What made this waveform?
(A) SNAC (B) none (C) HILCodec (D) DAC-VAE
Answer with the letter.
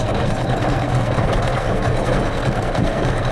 A